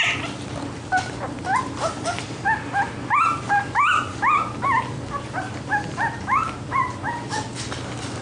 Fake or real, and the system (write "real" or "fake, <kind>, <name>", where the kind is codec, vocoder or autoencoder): real